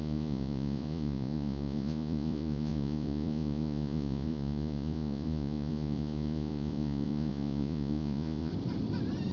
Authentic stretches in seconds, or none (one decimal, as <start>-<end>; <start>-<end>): 8.5-9.3